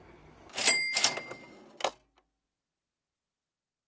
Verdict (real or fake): real